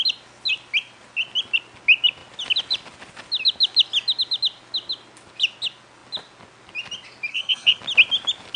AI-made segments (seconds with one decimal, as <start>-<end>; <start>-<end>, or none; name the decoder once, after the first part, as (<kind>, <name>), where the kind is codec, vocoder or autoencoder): 7.3-7.8 (codec, SNAC)

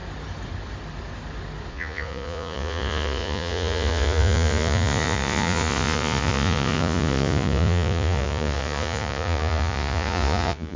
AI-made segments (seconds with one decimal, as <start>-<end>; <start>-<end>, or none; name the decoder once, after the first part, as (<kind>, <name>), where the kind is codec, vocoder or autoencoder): 1.7-10.8 (vocoder, Vocos)

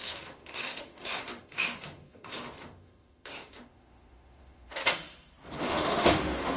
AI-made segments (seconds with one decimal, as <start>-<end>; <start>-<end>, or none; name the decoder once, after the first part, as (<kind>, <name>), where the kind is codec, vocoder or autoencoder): 0.0-4.8 (autoencoder, DAC-VAE); 5.6-6.6

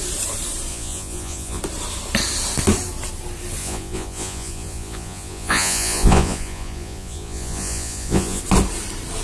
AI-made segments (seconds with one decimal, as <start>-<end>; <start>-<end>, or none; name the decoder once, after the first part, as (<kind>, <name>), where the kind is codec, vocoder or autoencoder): 0.7-1.6 (vocoder, Vocos); 3.6-8.4